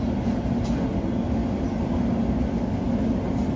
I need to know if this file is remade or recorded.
recorded